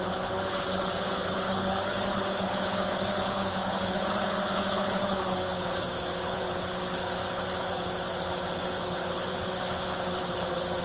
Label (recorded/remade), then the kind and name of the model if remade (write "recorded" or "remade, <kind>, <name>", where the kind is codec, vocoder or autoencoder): remade, codec, HILCodec